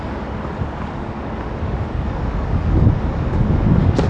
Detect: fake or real fake